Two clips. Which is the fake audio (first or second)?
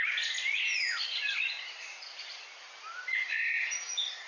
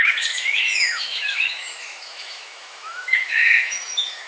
second